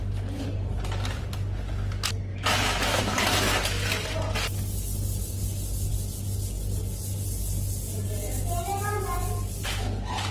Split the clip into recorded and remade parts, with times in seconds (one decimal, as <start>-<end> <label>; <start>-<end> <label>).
0.0-2.3 recorded; 2.3-3.0 remade; 3.0-10.3 recorded